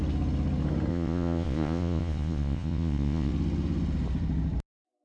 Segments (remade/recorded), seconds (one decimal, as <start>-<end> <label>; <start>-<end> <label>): 0.0-0.9 recorded; 0.9-3.3 remade; 3.3-5.0 recorded